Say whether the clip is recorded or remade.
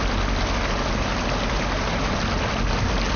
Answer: recorded